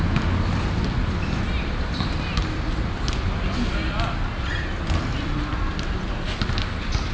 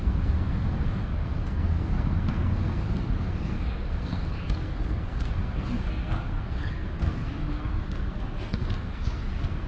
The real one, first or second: first